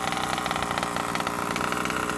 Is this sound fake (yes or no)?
no